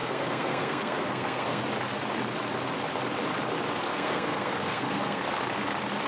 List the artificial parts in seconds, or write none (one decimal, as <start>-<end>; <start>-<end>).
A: 0.0-1.6; 3.9-5.2